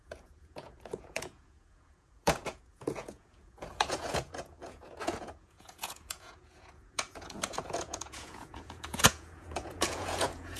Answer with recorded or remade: remade